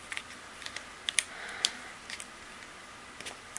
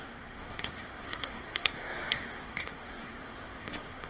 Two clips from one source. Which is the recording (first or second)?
first